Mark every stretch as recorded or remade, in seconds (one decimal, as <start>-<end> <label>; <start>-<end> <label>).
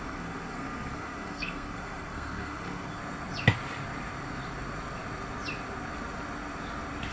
0.0-3.0 remade; 3.0-7.1 recorded